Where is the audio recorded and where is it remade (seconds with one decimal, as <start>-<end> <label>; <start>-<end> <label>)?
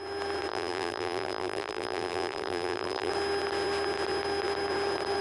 0.0-0.5 recorded; 0.5-3.1 remade; 3.1-5.2 recorded